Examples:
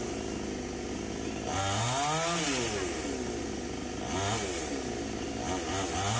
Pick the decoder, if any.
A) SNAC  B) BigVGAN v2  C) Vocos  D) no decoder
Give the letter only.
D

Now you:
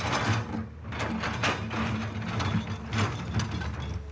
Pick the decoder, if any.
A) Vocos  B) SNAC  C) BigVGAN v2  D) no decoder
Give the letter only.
D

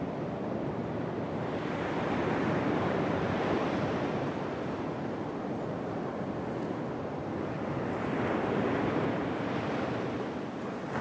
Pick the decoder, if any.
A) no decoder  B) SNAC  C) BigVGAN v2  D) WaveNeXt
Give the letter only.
A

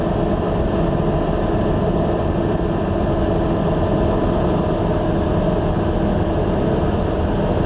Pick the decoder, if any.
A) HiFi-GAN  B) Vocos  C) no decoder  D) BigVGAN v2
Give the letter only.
C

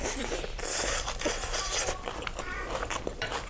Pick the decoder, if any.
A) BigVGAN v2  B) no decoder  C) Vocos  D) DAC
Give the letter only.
A